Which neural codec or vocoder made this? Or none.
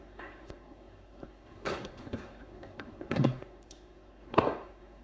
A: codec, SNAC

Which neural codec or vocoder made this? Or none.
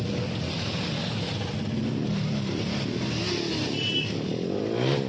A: none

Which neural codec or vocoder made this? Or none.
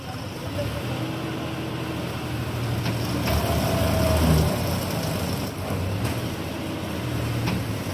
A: none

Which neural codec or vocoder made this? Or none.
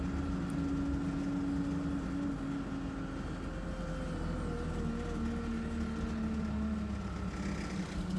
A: none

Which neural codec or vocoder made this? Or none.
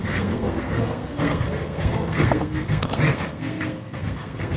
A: codec, SNAC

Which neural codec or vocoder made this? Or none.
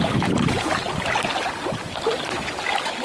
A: none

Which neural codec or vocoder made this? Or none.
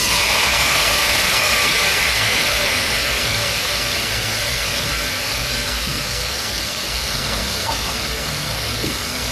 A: codec, SNAC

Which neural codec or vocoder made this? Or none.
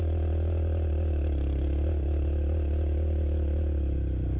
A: none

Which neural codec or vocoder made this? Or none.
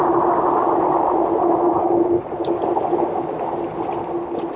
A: none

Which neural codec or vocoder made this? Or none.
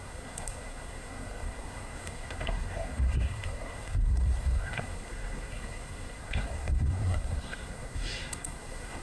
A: codec, SNAC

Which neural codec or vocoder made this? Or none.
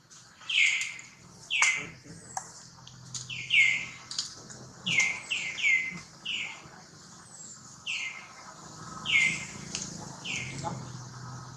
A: none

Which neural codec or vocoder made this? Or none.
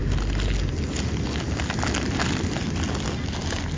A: none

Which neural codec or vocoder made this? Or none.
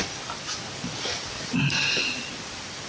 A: none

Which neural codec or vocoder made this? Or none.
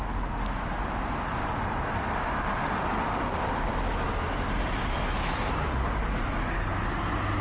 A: none